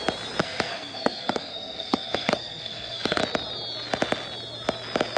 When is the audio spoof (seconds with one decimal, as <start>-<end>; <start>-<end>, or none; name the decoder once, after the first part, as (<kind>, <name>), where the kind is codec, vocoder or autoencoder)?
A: 0.4-3.2 (codec, SNAC)